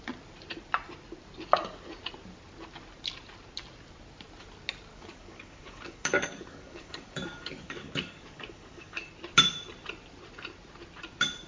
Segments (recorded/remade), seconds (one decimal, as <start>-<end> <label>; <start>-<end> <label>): 0.0-4.9 recorded; 4.9-9.1 remade; 9.1-11.5 recorded